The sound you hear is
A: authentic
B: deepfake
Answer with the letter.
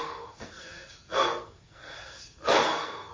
B